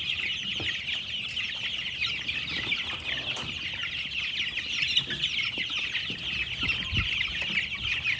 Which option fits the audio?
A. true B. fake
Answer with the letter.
A